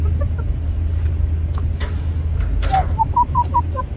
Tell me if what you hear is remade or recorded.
recorded